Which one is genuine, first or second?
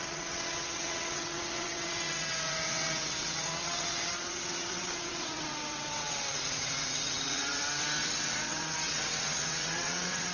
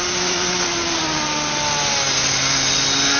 second